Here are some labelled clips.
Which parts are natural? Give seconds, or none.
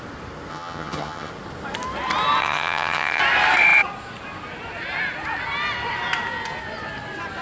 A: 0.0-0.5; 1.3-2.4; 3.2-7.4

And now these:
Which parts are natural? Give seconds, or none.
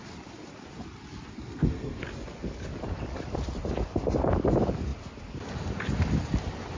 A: 0.0-1.3; 2.0-6.8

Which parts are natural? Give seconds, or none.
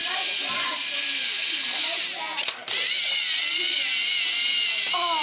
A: 0.0-5.2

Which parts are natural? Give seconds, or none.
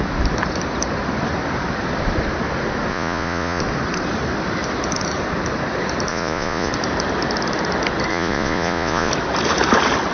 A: 0.0-2.9; 3.6-6.1; 6.7-8.1; 9.1-10.1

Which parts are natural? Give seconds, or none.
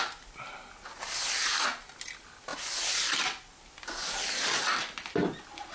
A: 0.0-5.7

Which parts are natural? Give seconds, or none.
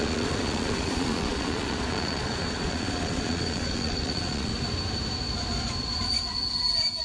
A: 4.5-7.0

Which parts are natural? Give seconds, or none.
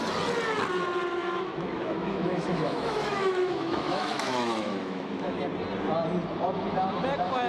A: 0.0-1.2; 5.4-7.5